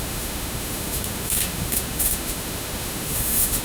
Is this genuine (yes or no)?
no